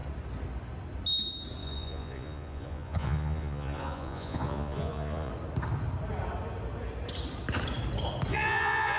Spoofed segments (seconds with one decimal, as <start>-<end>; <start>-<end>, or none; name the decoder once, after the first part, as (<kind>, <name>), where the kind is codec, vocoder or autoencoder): 1.6-5.3 (vocoder, Vocos); 8.3-9.0